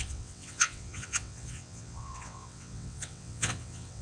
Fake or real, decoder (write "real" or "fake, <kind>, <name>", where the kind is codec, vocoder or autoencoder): fake, vocoder, WaveNeXt